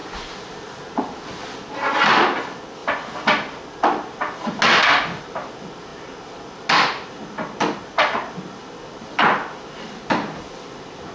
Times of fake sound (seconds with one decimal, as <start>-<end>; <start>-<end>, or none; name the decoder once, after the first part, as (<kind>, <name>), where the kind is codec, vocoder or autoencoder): none